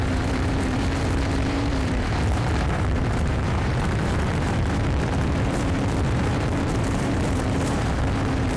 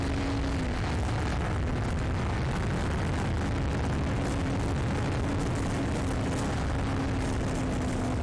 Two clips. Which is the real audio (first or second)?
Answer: second